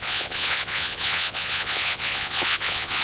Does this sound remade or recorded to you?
remade